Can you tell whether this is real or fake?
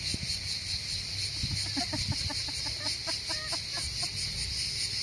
real